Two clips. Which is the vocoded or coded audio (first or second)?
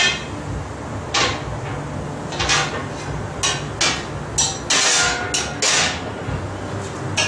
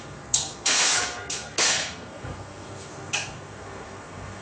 second